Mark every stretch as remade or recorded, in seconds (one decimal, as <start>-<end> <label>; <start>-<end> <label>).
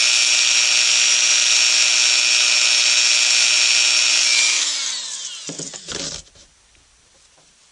0.0-7.7 recorded